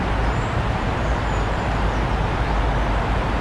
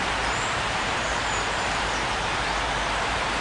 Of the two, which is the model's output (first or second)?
second